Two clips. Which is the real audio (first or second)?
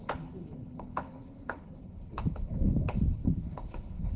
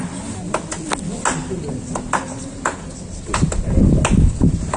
second